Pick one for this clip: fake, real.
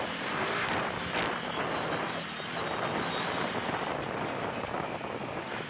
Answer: real